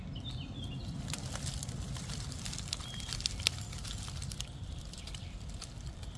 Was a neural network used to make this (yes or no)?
yes